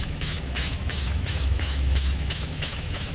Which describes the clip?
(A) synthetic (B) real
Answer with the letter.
A